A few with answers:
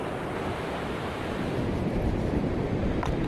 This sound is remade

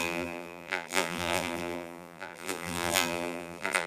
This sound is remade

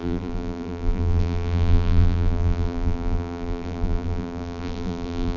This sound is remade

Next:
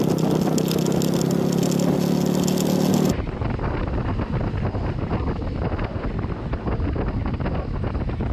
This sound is recorded